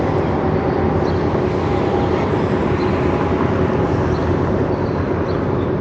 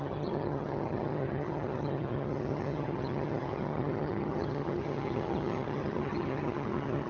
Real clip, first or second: first